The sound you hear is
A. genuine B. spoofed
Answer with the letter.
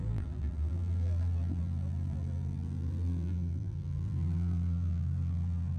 B